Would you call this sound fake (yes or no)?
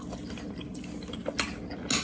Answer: no